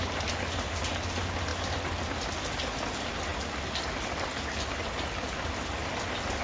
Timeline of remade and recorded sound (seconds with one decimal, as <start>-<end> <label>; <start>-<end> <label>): 0.0-6.4 recorded